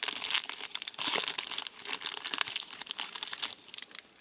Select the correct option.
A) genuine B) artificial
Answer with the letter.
A